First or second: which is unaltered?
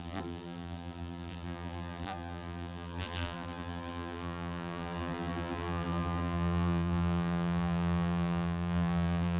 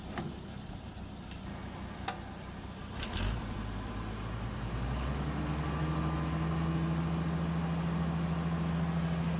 second